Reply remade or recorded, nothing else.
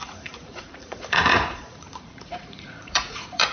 remade